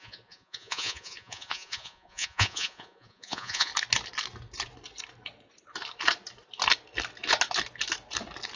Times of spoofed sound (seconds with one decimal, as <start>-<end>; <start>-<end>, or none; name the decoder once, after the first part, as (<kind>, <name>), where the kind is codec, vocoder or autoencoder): 0.0-3.7 (vocoder, Vocos)